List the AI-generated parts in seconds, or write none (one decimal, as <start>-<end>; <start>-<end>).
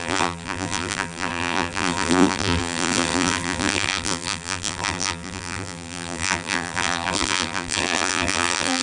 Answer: 0.0-8.8